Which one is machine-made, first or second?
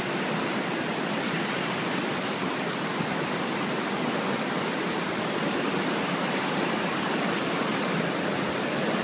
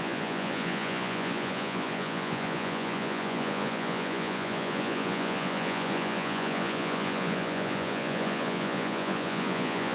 second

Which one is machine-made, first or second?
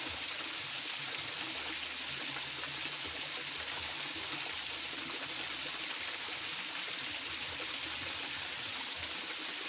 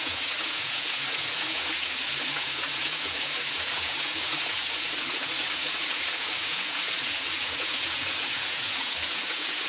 second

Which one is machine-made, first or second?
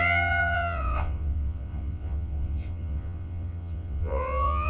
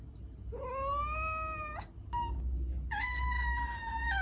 first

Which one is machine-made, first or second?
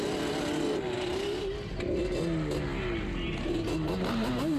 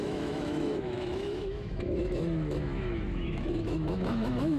second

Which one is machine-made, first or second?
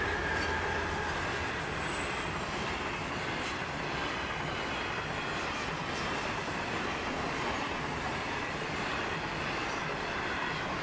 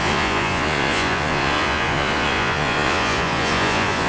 second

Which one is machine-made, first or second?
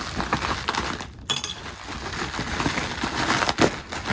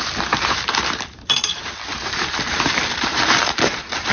second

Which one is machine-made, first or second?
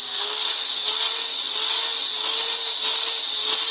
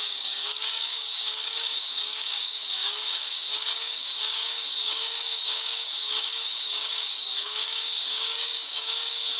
second